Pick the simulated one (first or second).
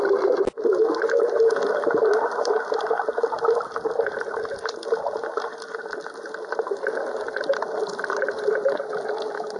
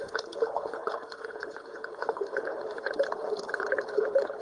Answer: second